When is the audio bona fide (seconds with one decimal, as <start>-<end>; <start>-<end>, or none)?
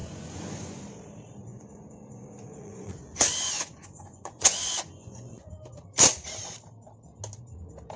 0.8-1.5; 5.5-8.0